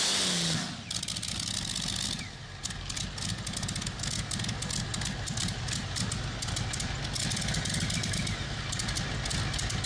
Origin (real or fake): real